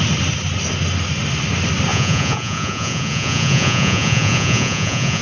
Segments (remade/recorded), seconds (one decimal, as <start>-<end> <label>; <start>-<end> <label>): 0.0-1.9 recorded; 1.9-5.2 remade